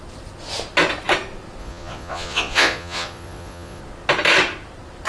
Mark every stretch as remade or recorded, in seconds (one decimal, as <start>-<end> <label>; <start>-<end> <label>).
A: 0.0-1.6 recorded; 1.6-3.8 remade; 3.8-5.1 recorded